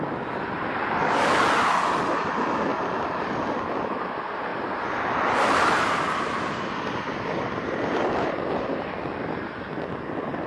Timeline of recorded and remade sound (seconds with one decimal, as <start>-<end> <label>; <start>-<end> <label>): 0.0-10.5 recorded